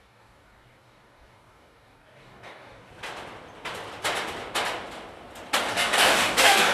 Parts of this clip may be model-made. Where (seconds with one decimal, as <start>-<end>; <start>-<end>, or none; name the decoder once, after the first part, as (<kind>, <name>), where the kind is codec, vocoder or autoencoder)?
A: 0.0-2.9 (codec, DAC); 5.7-6.7